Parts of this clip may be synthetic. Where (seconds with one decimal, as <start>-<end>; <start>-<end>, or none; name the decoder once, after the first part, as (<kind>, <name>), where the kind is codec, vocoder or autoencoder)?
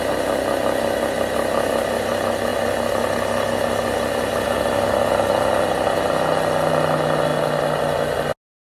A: none